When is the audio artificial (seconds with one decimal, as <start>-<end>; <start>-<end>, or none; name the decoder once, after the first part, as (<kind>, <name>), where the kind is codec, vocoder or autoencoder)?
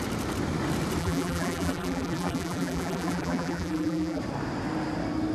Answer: 1.0-4.2 (vocoder, BigVGAN v2)